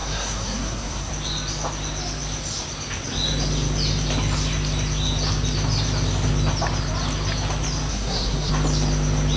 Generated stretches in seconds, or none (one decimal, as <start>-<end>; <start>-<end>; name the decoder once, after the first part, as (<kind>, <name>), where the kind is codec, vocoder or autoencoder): 0.0-1.1 (codec, SNAC); 7.9-8.5